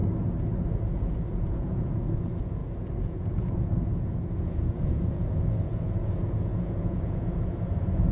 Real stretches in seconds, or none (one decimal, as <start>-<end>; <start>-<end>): 0.0-0.7